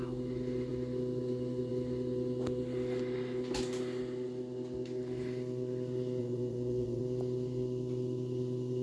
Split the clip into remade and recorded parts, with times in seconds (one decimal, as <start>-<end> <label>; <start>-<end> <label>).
0.0-6.2 recorded; 6.2-7.0 remade; 7.0-8.8 recorded